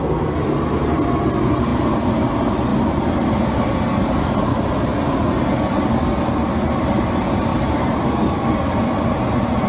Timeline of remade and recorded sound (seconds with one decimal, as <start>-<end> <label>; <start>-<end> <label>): 0.0-7.5 recorded; 7.5-8.1 remade; 8.1-9.7 recorded